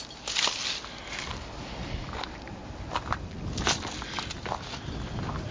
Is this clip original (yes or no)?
yes